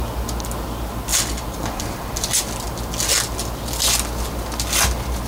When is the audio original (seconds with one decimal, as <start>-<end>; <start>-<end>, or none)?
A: 0.0-5.3